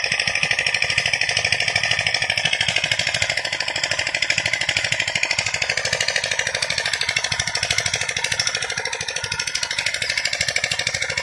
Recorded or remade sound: recorded